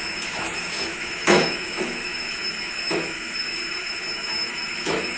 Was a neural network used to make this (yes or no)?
yes